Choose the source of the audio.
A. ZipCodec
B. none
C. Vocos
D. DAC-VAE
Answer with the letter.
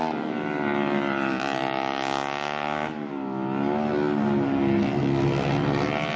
B